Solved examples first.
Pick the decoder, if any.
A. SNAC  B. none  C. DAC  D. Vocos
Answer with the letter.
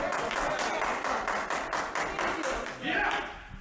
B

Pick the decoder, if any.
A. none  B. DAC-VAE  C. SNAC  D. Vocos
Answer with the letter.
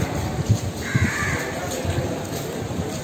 A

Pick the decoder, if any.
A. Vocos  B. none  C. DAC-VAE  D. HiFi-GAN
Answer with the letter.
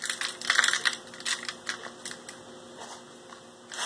B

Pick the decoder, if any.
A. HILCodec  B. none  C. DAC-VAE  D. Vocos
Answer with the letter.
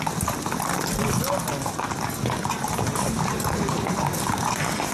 B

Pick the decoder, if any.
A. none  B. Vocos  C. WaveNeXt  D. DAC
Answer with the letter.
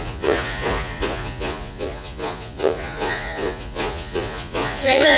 B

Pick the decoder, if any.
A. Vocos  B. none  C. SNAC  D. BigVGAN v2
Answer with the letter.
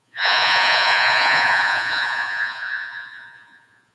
A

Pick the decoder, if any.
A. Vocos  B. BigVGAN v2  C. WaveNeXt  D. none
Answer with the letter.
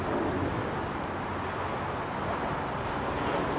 D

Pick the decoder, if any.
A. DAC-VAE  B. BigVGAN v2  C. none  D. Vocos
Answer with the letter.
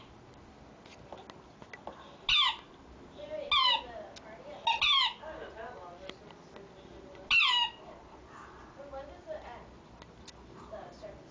C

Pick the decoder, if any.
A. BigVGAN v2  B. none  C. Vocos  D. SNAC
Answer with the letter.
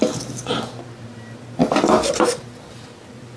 B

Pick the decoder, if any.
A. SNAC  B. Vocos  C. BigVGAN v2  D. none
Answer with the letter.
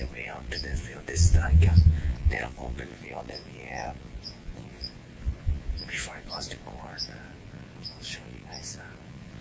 B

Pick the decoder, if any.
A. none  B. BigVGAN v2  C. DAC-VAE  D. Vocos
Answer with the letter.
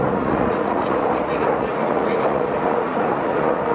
D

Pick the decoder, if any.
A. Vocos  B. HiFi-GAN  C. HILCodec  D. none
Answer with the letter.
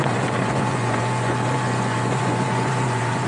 A